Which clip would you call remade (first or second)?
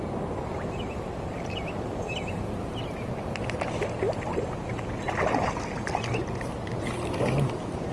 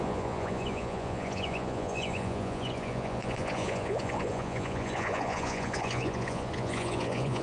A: second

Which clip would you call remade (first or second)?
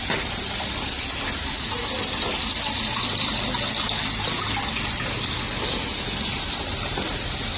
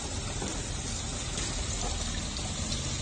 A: first